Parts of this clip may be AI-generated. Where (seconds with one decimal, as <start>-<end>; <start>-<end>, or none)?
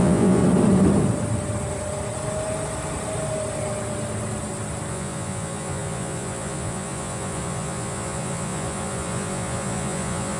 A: 0.0-0.4; 4.9-10.4